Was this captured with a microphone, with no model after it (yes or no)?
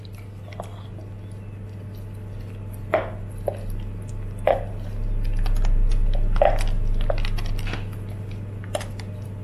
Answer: yes